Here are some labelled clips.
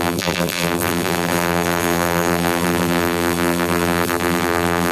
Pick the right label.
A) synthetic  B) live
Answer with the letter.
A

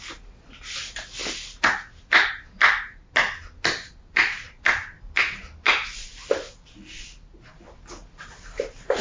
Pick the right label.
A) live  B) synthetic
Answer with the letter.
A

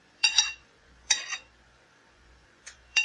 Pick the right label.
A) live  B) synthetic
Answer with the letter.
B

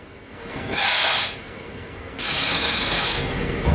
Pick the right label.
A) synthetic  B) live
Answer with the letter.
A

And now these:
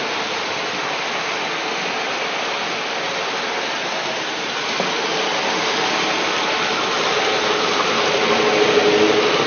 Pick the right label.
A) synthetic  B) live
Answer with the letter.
B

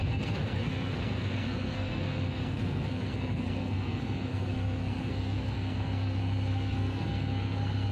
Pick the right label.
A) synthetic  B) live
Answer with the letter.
A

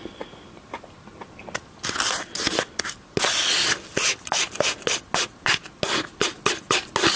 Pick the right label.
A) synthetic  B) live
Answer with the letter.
B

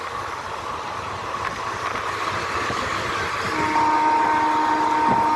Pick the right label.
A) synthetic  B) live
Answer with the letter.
B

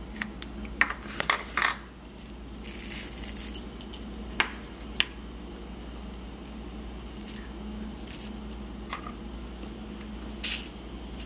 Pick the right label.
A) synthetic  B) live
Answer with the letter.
B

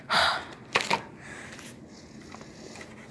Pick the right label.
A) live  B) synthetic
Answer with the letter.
A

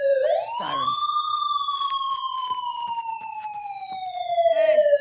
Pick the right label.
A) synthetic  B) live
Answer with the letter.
A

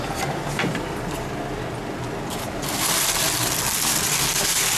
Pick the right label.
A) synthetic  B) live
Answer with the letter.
B